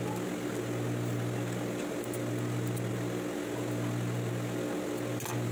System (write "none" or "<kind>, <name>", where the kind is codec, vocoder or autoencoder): none